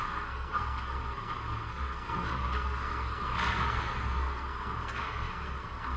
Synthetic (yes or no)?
yes